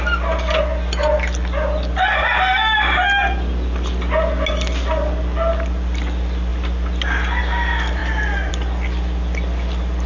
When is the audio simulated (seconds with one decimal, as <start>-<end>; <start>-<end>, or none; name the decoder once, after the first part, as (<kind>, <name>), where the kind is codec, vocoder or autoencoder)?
none